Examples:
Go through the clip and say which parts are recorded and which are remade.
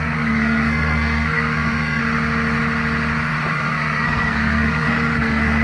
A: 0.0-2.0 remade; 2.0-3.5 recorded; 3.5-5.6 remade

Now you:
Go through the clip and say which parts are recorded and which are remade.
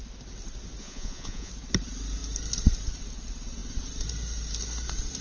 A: 0.0-0.8 recorded; 0.8-1.5 remade; 1.5-5.2 recorded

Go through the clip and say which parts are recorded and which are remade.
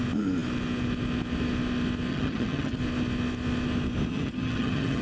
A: 0.0-2.1 recorded; 2.1-2.8 remade; 2.8-4.1 recorded; 4.1-5.0 remade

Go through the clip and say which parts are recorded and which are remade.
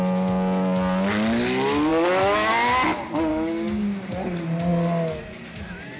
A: 0.0-3.3 recorded; 3.3-4.1 remade; 4.1-6.0 recorded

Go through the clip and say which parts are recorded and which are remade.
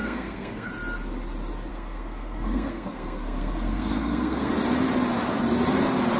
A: 0.0-0.7 remade; 0.7-1.7 recorded; 1.7-4.5 remade; 4.5-6.2 recorded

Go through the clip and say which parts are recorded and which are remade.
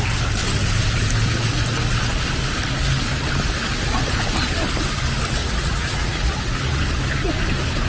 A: 0.0-5.4 recorded; 5.4-6.8 remade; 6.8-7.9 recorded